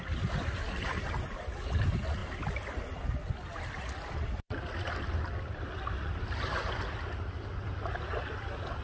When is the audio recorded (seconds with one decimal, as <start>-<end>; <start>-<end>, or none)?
0.0-8.8